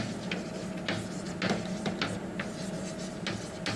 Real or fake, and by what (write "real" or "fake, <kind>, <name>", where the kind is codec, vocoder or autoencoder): real